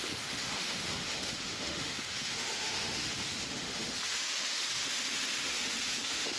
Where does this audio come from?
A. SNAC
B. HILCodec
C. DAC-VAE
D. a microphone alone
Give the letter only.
C